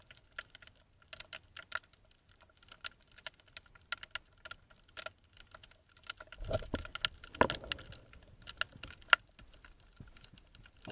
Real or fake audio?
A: real